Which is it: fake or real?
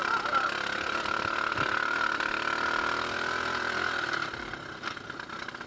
real